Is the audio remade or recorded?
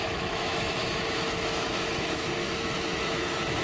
remade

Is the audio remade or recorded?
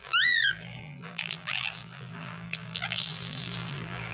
remade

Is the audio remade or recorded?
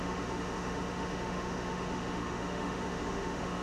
remade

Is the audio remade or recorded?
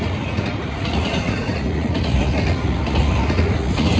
remade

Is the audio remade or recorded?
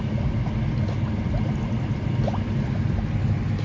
recorded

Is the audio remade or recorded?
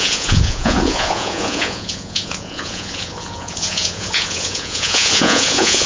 remade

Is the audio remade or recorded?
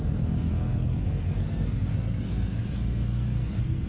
remade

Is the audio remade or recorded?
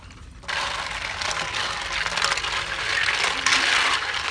recorded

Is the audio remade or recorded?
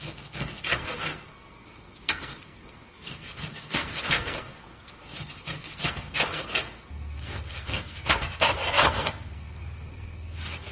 remade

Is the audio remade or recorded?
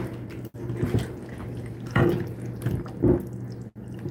recorded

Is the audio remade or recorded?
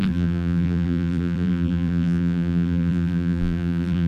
remade